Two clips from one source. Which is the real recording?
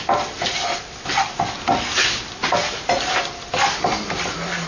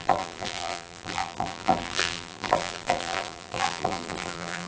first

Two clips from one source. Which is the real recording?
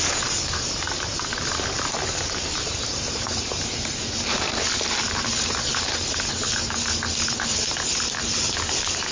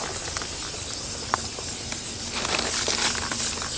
second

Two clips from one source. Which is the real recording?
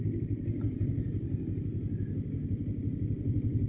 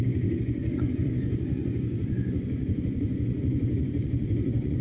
first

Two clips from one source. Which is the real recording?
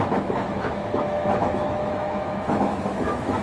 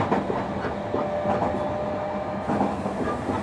second